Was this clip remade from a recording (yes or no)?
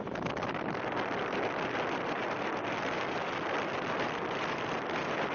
no